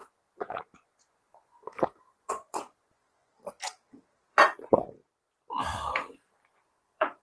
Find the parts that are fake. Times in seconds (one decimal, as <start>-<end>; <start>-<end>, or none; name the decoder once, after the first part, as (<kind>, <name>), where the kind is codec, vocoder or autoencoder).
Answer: 0.0-3.3 (vocoder, Vocos); 4.3-5.0; 6.4-7.2